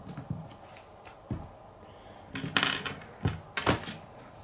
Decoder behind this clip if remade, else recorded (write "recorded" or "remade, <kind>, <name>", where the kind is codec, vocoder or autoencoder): recorded